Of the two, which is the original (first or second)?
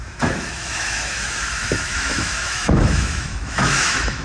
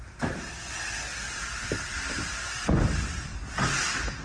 second